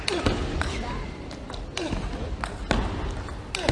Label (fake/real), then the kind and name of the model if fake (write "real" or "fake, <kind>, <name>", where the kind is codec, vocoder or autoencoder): real